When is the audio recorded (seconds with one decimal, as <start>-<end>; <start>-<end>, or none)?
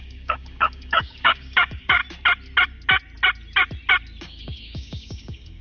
2.0-4.2